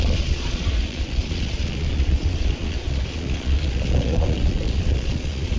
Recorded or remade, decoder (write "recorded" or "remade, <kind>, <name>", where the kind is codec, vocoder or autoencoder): remade, vocoder, Vocos